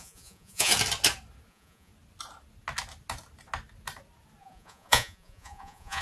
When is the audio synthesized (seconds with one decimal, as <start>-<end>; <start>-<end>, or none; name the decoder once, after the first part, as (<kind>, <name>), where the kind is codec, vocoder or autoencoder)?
0.0-0.7 (vocoder, Vocos); 1.5-1.9; 4.4-6.0